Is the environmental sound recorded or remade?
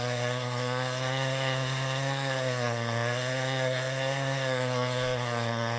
remade